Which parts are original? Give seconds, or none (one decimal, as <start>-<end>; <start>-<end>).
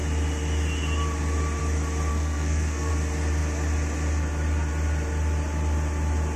0.0-2.1; 2.9-6.4